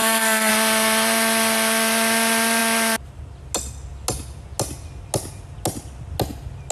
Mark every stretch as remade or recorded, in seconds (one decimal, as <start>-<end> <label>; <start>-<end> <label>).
0.0-0.5 remade; 0.5-6.7 recorded